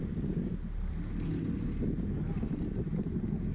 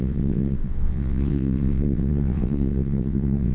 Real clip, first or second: first